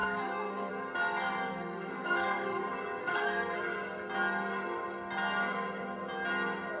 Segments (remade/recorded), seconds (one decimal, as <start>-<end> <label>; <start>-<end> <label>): 0.0-0.7 remade; 0.7-1.5 recorded; 1.5-2.6 remade; 2.6-3.0 recorded; 3.0-3.6 remade; 3.6-6.8 recorded